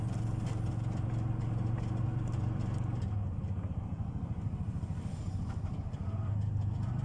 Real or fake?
real